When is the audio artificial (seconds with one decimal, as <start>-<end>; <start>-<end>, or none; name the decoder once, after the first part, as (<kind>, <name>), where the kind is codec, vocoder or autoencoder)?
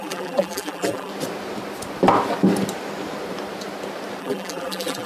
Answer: 0.0-1.1 (vocoder, BigVGAN v2); 4.2-5.1